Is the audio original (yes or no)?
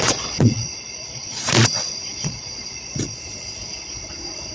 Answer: no